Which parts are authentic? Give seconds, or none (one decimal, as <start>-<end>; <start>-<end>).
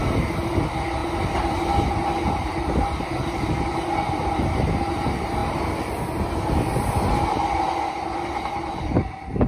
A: 0.0-9.5